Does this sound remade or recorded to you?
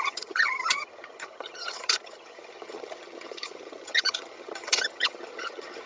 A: remade